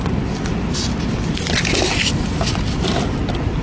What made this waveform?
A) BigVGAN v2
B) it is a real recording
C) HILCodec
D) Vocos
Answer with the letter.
B